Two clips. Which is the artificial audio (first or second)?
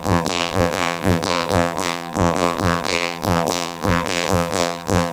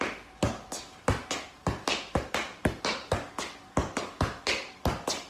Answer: first